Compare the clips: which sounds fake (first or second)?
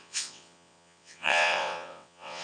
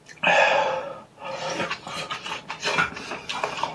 first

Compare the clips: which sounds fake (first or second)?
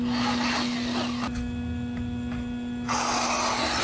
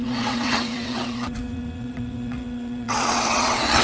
second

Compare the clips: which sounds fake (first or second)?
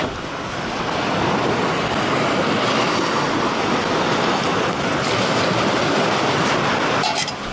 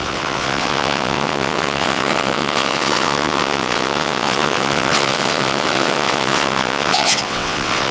second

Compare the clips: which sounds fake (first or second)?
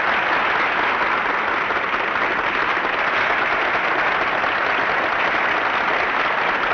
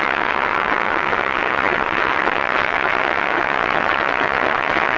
second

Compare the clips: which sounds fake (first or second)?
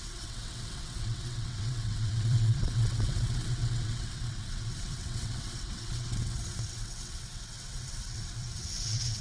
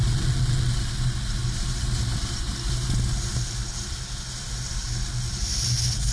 first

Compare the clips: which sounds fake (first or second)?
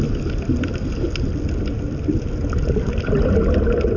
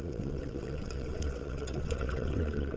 second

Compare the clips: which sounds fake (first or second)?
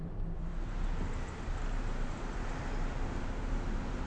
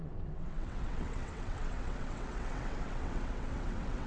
second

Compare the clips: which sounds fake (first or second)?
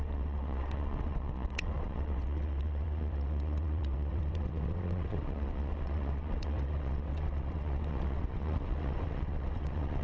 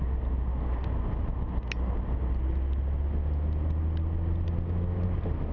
first